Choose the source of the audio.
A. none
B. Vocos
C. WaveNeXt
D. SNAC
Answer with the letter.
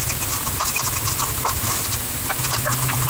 A